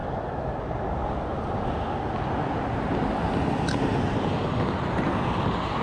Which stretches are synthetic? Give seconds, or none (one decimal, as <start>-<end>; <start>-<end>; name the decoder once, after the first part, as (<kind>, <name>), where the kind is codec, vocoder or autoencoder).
none